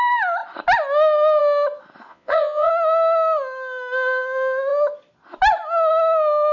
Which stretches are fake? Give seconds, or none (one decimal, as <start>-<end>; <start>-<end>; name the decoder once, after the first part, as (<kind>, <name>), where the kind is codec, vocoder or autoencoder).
2.1-2.7 (vocoder, Vocos)